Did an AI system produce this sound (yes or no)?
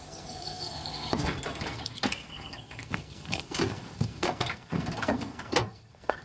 yes